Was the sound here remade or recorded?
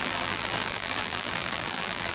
remade